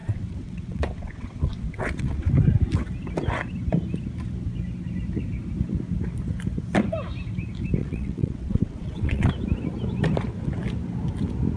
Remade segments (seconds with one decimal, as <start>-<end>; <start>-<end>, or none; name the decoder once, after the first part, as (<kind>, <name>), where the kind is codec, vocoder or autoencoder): 0.0-2.3 (vocoder, WaveNeXt); 7.8-9.3